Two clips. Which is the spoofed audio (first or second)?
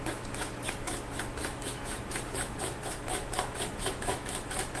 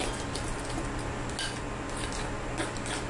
first